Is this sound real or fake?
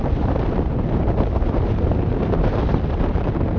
fake